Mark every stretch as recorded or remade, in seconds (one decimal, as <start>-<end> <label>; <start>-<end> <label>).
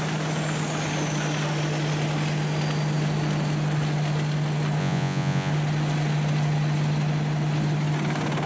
0.0-4.8 recorded; 4.8-5.5 remade; 5.5-8.5 recorded